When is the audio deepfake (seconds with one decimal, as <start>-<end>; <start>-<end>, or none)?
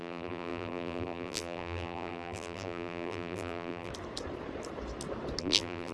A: 0.0-3.9; 5.4-5.9